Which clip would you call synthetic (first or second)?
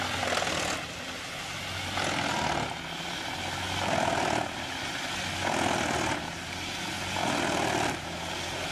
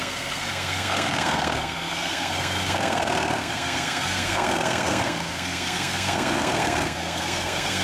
second